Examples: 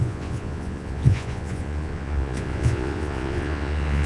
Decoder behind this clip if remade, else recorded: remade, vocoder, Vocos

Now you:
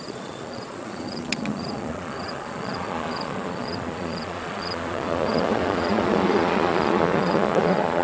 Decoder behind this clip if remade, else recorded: remade, vocoder, Vocos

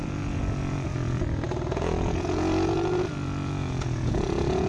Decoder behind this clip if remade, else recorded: remade, vocoder, Vocos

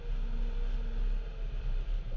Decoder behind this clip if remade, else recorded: recorded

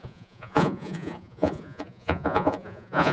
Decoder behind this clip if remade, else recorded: remade, vocoder, Vocos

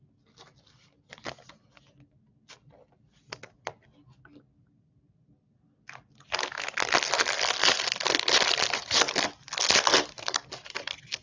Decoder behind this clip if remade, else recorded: recorded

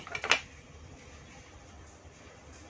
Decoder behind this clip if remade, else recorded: recorded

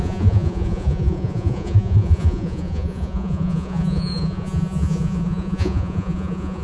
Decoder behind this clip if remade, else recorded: remade, vocoder, Vocos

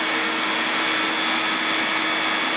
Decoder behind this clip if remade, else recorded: recorded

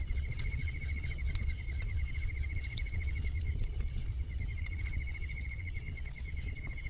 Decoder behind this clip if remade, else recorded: remade, vocoder, Vocos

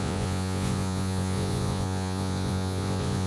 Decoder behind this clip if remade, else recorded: remade, vocoder, Vocos